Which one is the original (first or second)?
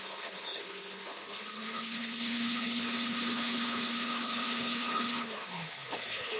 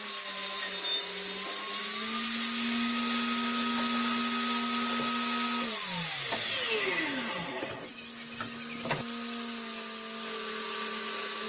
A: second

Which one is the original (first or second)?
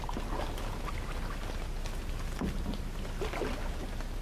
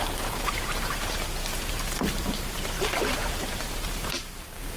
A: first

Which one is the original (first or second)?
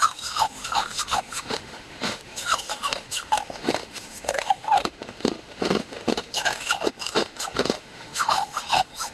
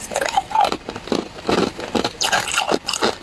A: second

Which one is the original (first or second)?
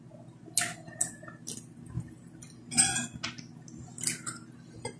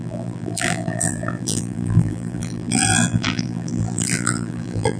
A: first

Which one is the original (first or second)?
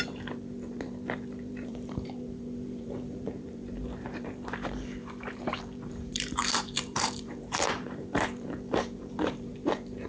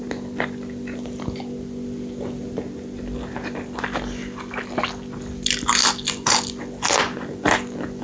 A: second